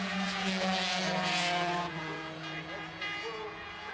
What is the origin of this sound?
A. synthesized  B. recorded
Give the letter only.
A